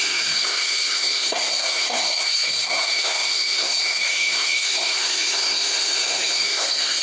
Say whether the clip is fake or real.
fake